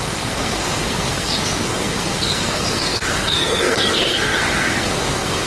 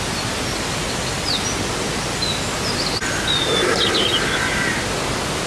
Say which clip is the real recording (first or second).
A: second